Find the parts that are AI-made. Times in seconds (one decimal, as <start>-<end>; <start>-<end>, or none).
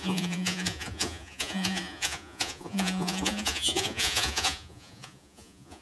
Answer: 0.0-5.8